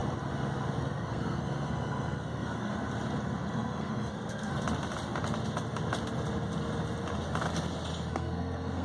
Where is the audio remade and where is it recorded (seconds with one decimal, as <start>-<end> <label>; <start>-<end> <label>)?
0.0-0.8 recorded; 0.8-2.7 remade; 2.7-3.5 recorded; 3.5-4.5 remade; 4.5-8.1 recorded; 8.1-8.8 remade